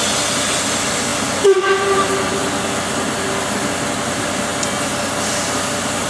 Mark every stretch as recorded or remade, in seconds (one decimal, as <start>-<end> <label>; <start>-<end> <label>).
0.0-6.1 recorded